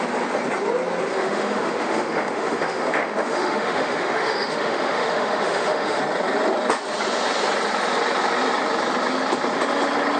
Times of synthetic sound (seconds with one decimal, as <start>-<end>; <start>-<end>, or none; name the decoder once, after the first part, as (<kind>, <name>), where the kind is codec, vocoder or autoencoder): 1.1-6.0 (autoencoder, DAC-VAE)